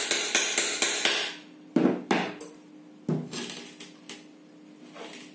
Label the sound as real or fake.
real